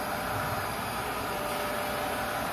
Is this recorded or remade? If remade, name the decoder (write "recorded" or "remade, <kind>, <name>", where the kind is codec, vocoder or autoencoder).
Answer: recorded